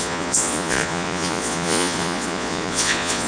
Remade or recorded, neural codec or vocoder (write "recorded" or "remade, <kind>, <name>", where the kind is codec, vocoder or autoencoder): remade, vocoder, Vocos